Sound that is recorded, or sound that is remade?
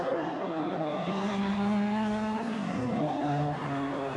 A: remade